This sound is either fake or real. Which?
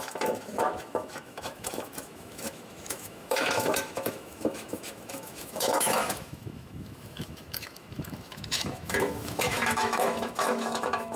fake